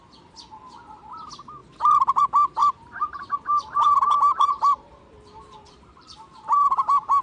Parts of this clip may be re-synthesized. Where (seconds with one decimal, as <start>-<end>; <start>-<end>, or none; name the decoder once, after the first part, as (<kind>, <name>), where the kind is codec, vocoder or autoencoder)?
2.6-7.2 (vocoder, BigVGAN v2)